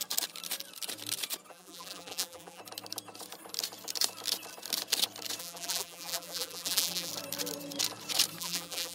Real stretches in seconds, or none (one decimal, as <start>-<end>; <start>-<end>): 0.0-1.5; 2.6-5.4; 7.1-8.4